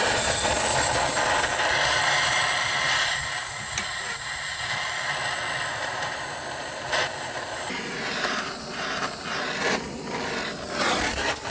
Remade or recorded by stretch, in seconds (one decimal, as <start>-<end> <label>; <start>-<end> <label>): 0.0-5.7 recorded; 5.7-8.5 remade; 8.5-11.5 recorded